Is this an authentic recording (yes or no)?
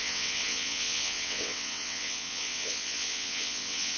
no